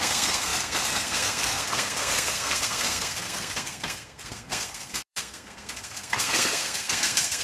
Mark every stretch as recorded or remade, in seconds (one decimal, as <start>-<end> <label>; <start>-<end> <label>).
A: 0.0-7.4 remade